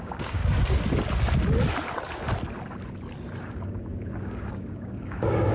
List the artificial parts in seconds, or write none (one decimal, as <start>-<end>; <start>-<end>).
0.0-0.4; 3.4-5.5